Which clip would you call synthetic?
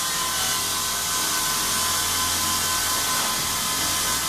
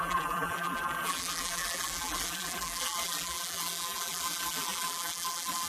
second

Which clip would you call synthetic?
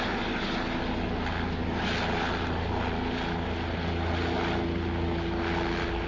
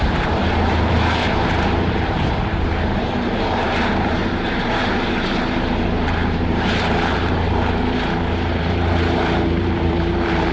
second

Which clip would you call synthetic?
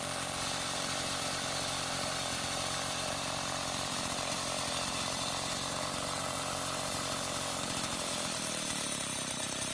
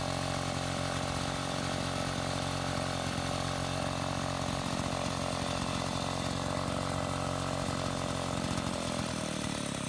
first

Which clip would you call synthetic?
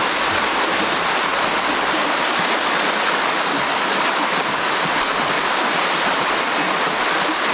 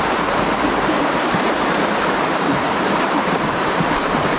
second